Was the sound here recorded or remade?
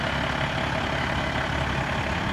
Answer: recorded